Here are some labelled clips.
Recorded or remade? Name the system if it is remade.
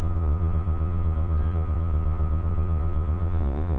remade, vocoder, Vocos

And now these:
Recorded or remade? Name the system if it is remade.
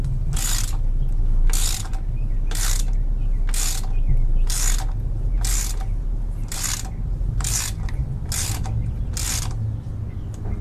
recorded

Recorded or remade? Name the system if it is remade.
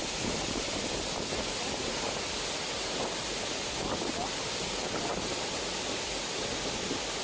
recorded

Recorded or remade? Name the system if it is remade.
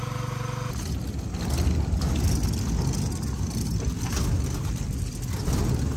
recorded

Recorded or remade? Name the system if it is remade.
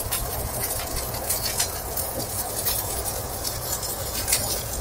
remade, vocoder, Vocos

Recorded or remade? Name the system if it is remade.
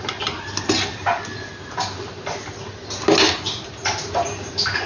recorded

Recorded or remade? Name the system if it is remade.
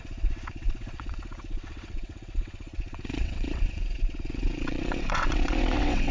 remade, vocoder, WaveNeXt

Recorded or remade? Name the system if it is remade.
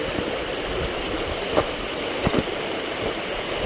recorded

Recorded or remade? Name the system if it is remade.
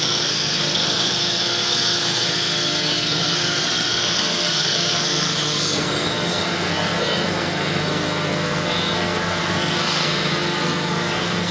remade, codec, SNAC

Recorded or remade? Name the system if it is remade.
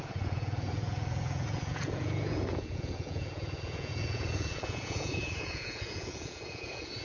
remade, vocoder, Vocos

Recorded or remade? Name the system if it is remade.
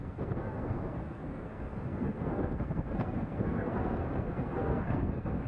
remade, codec, SNAC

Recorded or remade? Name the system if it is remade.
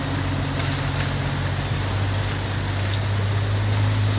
recorded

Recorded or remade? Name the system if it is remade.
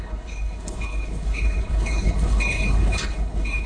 remade, codec, HILCodec